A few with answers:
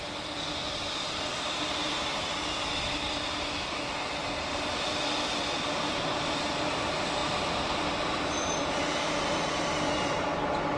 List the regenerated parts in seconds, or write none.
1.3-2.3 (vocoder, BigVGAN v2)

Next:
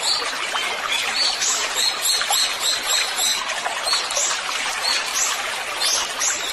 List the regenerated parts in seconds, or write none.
0.0-5.1 (vocoder, BigVGAN v2)

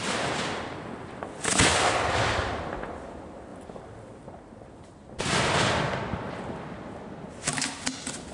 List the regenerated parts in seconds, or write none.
0.0-0.7 (vocoder, BigVGAN v2)

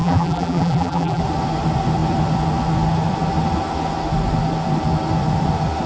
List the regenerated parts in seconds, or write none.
0.0-1.2 (vocoder, BigVGAN v2)